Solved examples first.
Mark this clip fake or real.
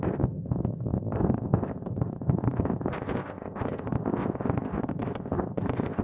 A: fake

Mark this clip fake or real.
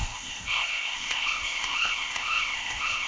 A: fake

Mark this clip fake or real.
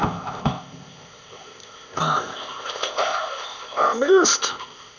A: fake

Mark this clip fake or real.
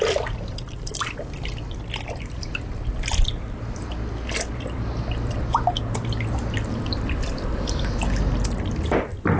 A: real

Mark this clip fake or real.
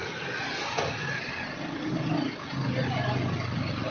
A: real